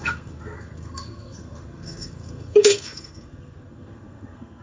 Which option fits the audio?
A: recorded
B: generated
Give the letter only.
B